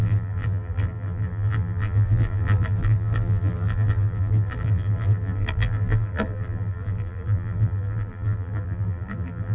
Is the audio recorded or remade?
remade